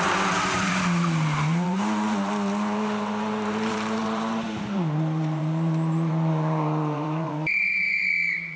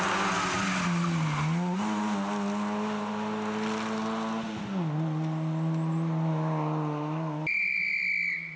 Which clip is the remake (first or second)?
first